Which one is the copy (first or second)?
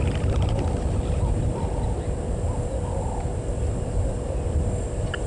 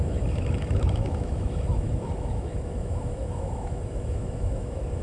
second